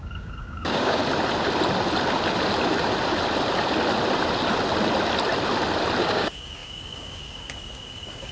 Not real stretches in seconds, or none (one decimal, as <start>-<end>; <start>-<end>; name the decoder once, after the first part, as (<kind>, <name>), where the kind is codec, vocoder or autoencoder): 0.0-1.0 (codec, DAC); 6.0-8.3

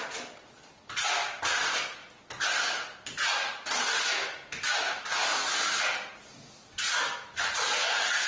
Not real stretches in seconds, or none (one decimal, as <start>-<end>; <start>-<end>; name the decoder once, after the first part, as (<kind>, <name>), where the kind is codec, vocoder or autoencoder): none

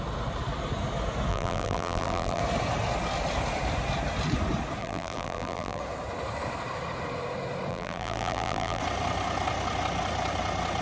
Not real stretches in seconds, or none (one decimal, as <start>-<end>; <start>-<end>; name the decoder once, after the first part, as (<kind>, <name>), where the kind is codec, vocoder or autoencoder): 1.3-2.4 (vocoder, BigVGAN v2); 4.8-5.8; 7.7-8.8

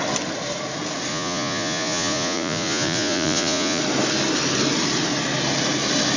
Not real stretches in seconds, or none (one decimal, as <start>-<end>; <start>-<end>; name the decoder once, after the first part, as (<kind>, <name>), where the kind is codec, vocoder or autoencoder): 1.1-3.8 (vocoder, Vocos)